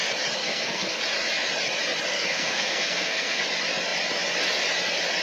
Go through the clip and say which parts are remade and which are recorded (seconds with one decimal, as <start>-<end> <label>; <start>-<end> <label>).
0.0-0.4 recorded; 0.4-1.0 remade; 1.0-2.1 recorded; 2.1-3.4 remade; 3.4-5.2 recorded